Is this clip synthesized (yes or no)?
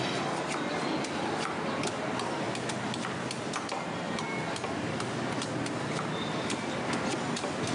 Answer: no